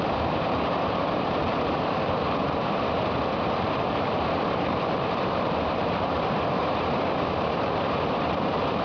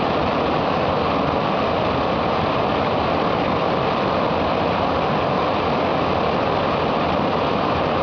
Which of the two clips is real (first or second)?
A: second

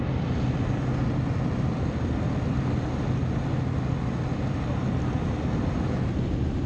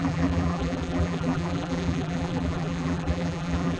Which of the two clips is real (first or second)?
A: first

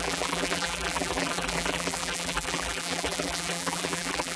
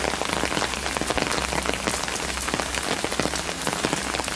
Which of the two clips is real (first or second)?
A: second